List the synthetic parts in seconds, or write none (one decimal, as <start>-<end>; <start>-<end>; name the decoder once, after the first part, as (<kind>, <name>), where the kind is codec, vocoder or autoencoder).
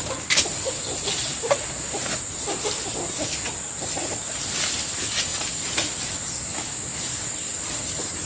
6.5-7.0 (autoencoder, DAC-VAE)